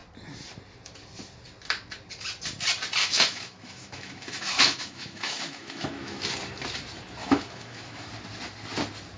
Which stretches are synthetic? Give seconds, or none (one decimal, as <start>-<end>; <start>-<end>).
3.0-6.2; 7.2-8.1